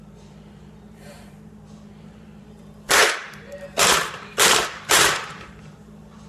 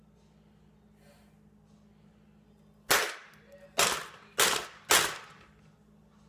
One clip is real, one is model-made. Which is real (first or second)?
second